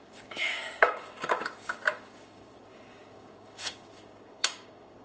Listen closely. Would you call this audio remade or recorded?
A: remade